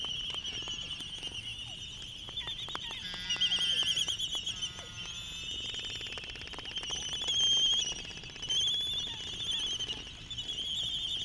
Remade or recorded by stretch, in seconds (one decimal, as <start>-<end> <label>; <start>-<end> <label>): 0.0-11.2 recorded